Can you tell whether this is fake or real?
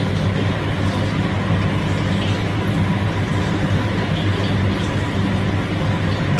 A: real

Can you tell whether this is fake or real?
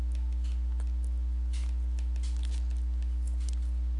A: real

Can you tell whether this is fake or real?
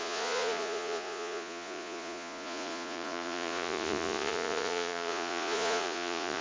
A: fake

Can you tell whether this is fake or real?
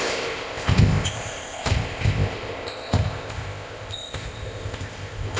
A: fake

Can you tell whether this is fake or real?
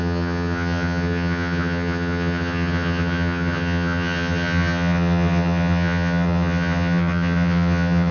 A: fake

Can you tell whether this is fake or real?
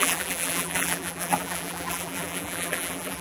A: fake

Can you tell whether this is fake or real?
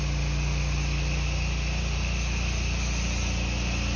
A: real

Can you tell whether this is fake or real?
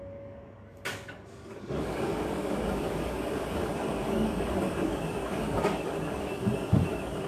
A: fake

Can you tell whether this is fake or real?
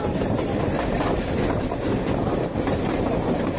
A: fake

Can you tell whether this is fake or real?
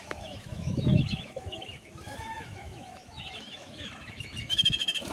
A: fake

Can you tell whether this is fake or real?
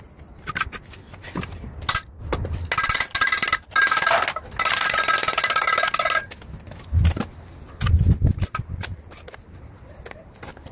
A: real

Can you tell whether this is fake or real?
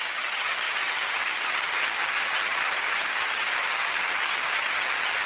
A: fake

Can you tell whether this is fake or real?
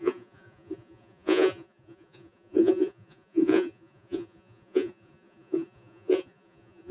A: fake